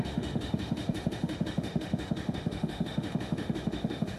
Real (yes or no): no